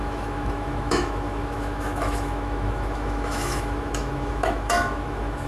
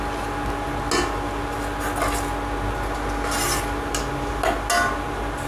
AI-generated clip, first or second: first